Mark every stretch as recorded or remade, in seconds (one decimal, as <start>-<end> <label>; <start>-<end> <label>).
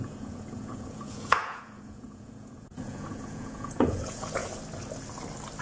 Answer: 0.0-4.4 remade; 4.4-5.6 recorded